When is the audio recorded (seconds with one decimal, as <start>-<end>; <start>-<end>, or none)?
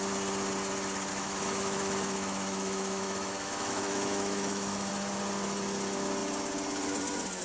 0.0-1.1; 4.9-7.4